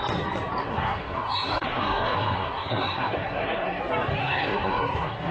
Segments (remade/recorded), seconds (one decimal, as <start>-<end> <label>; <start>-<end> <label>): 0.0-0.6 recorded; 0.6-3.8 remade; 3.8-4.2 recorded; 4.2-5.3 remade